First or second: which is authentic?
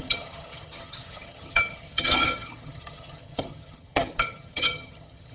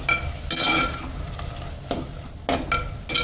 second